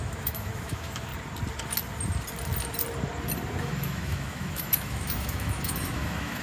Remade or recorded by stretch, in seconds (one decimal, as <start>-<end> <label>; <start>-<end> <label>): 0.0-1.1 remade; 1.1-3.6 recorded; 3.6-6.4 remade